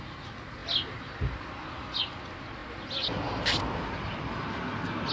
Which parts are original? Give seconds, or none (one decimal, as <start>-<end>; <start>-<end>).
0.0-5.1